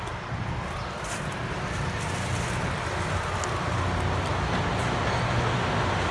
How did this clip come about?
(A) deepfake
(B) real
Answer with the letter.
B